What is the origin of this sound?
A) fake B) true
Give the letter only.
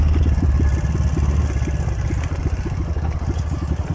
B